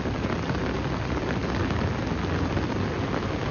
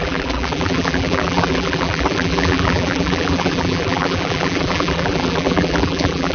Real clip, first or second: first